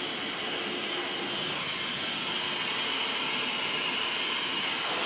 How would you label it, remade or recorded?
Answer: recorded